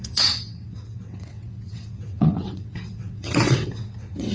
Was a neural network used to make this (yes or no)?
yes